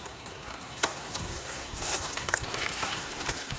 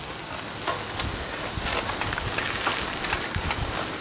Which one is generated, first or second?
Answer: first